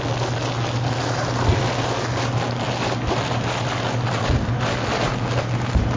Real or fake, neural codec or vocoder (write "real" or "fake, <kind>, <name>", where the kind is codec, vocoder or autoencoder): real